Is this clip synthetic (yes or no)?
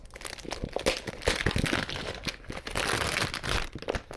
no